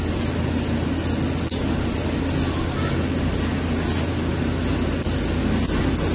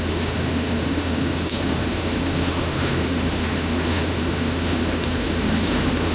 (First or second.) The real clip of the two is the first